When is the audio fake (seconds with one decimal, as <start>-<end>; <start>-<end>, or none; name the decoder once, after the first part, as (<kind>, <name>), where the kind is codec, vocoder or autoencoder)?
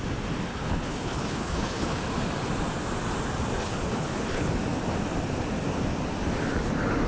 0.5-2.0 (codec, HILCodec); 3.6-4.5